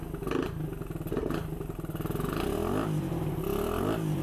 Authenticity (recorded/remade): recorded